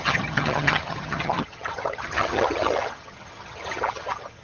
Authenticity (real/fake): fake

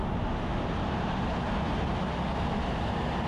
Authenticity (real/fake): real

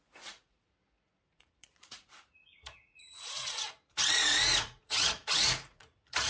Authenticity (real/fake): fake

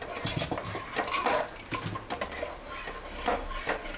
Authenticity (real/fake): real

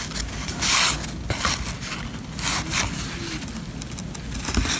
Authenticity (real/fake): real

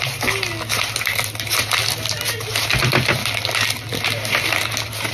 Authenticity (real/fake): real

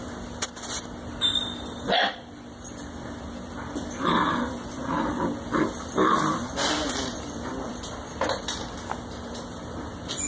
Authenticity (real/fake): fake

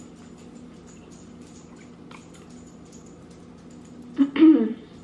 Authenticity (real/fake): real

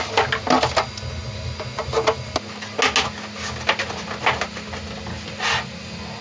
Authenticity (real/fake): real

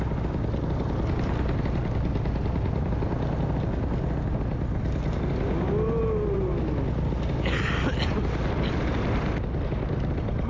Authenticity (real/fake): real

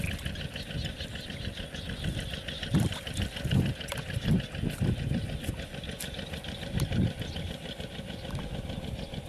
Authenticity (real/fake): real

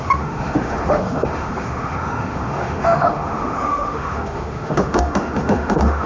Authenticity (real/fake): fake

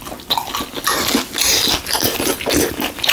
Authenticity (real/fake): real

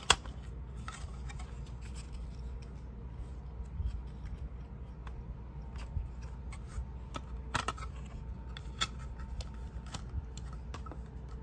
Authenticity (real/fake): real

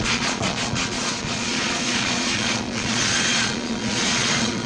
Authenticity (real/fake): fake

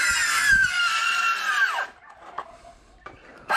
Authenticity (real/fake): fake